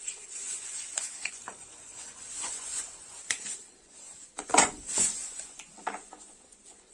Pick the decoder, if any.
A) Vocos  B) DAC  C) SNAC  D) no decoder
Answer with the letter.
A